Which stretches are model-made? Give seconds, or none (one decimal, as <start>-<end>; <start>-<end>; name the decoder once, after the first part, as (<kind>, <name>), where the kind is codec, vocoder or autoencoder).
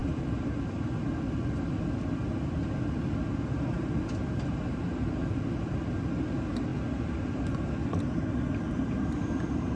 none